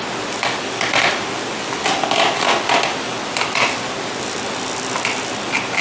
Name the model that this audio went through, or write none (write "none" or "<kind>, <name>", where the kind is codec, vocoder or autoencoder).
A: none